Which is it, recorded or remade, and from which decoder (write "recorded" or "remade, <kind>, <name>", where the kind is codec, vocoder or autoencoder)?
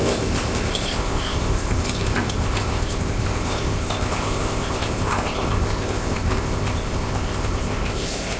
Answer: remade, codec, ZipCodec